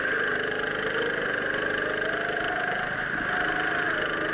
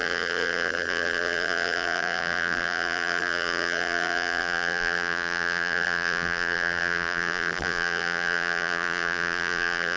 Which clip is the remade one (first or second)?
second